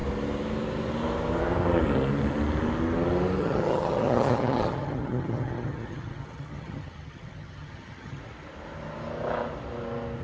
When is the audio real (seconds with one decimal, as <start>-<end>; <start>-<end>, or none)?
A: 0.0-3.4; 8.2-10.2